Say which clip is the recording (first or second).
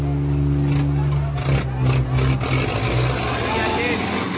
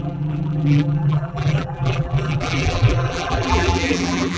first